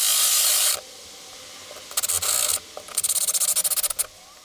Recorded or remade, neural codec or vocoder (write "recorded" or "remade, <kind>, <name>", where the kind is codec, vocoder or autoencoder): recorded